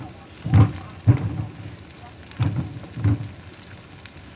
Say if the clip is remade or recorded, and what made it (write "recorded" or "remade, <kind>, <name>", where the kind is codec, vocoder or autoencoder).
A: recorded